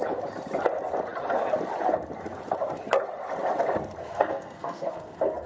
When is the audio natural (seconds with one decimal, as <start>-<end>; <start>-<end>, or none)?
0.0-4.0